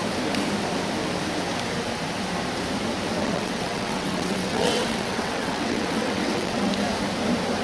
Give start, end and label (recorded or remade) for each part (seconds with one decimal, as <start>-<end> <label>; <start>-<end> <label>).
0.0-3.2 recorded; 3.2-6.7 remade; 6.7-7.6 recorded